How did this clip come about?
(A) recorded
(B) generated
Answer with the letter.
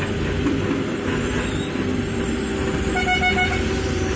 A